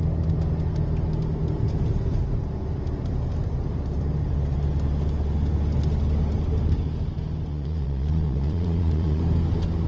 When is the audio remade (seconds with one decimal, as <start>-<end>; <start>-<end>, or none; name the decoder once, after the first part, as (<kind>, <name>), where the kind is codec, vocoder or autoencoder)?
7.5-9.2 (vocoder, Vocos)